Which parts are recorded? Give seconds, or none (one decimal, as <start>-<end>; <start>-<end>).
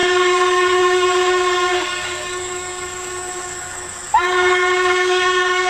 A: none